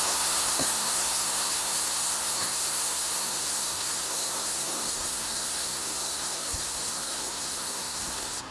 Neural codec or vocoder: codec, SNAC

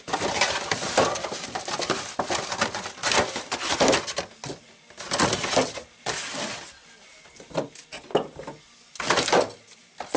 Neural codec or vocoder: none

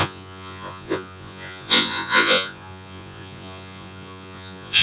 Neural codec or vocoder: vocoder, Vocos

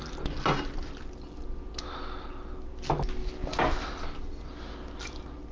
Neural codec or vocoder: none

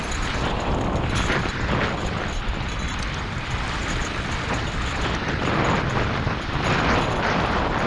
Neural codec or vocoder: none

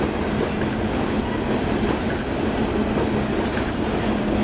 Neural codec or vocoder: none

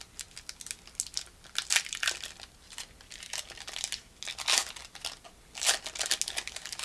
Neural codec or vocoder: none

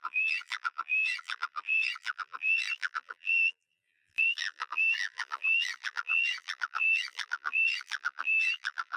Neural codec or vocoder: vocoder, BigVGAN v2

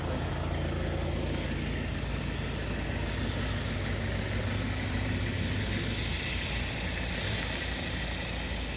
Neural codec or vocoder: none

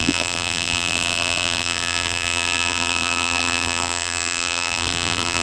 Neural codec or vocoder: vocoder, BigVGAN v2